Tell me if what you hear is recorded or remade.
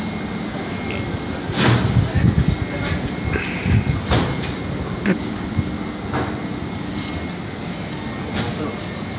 recorded